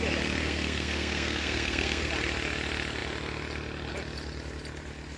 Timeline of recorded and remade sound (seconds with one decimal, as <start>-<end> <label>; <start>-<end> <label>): 0.0-0.4 recorded; 0.4-2.1 remade; 2.1-5.2 recorded